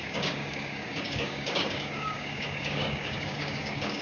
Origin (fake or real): fake